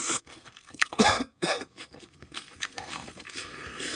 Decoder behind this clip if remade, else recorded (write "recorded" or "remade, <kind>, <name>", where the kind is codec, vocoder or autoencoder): remade, codec, SNAC